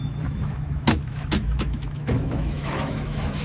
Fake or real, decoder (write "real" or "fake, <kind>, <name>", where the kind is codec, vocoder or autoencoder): fake, autoencoder, DAC-VAE